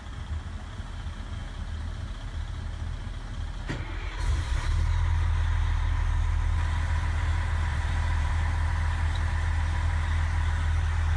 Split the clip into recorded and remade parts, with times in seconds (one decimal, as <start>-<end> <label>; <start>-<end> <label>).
0.0-7.7 recorded; 7.7-8.3 remade; 8.3-11.2 recorded